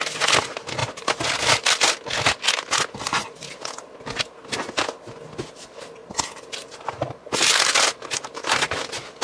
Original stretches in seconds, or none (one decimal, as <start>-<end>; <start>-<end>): 0.0-9.2

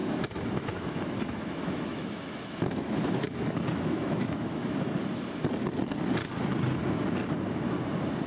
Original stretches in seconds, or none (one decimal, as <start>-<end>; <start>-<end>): 5.0-8.3

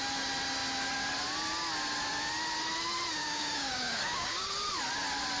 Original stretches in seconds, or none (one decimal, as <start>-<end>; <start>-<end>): 0.0-3.2; 4.5-5.4

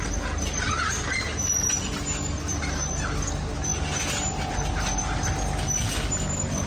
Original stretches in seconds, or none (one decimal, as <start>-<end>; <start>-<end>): 0.0-6.7

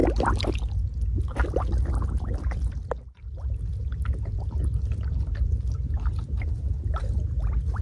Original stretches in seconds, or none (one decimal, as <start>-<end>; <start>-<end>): 0.0-7.8

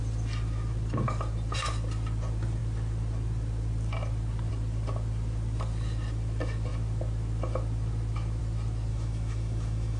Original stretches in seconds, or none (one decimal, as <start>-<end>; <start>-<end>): 0.0-8.9